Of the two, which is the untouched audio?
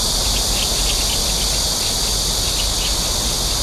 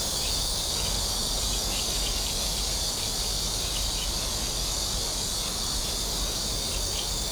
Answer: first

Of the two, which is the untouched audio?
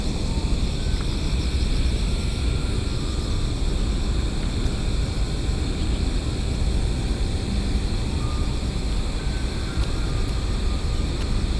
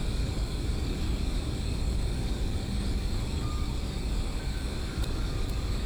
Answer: first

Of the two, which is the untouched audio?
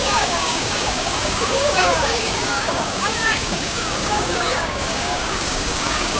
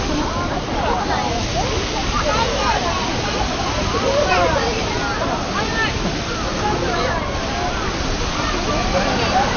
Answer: second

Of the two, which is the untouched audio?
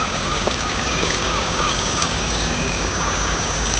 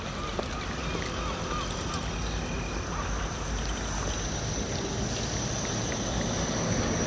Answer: second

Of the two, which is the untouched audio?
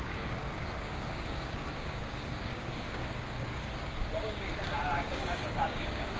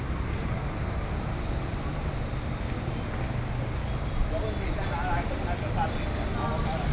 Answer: second